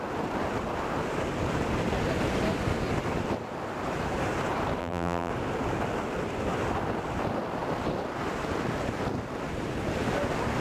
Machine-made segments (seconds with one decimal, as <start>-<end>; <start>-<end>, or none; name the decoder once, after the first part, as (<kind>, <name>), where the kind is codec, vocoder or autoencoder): 4.8-5.3 (vocoder, BigVGAN v2)